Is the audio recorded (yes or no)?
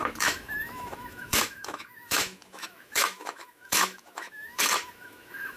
no